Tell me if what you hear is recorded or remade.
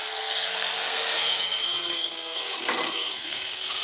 remade